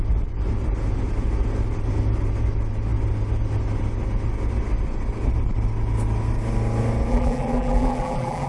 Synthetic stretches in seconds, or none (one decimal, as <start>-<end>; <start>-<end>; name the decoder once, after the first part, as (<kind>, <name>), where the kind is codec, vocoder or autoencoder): 7.1-8.5 (vocoder, BigVGAN v2)